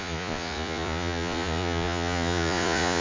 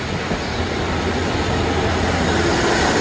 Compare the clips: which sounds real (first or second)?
second